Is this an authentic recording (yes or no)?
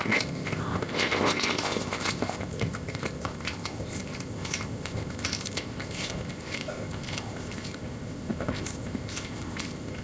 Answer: no